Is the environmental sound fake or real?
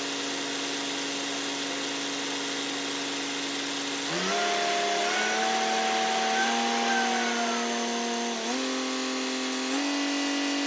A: real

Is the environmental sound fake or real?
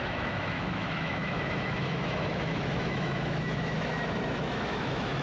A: fake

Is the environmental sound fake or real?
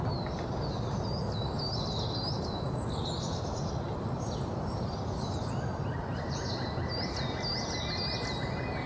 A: real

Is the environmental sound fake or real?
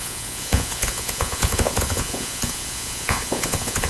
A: fake